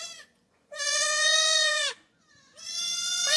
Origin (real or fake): fake